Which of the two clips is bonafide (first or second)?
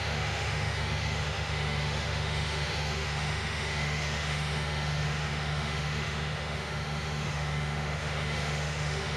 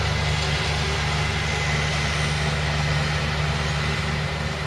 second